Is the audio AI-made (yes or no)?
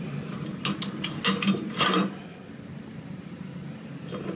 no